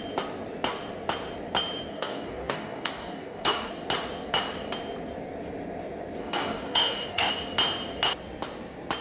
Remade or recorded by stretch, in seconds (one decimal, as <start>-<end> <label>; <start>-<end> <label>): 0.0-1.9 recorded; 1.9-3.7 remade; 3.7-6.2 recorded; 6.2-7.3 remade; 7.3-9.0 recorded